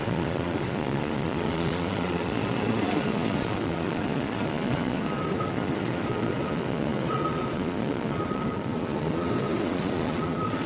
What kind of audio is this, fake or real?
fake